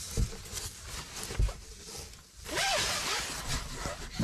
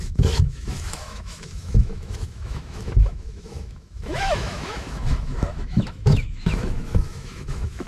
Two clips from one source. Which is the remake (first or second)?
second